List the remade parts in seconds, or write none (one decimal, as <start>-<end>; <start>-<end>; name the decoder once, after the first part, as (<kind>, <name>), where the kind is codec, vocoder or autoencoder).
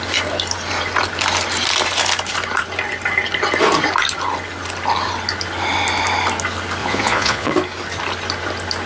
6.8-7.5 (vocoder, Vocos)